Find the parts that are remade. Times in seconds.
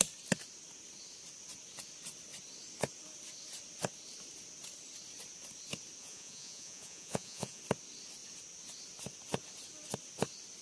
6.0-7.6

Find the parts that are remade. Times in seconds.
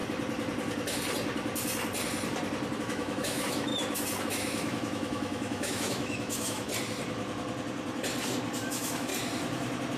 2.8-3.7; 4.2-6.7; 8.7-9.1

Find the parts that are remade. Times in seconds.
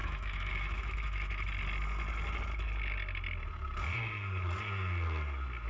0.0-1.5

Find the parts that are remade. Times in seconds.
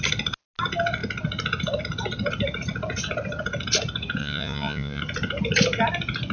4.2-5.0